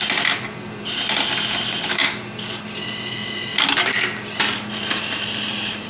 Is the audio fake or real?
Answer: real